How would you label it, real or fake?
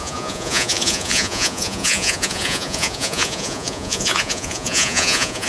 fake